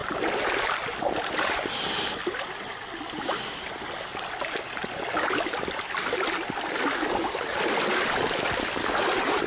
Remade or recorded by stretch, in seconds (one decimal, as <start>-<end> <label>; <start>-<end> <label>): 0.0-9.5 recorded